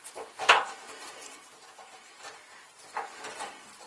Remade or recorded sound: recorded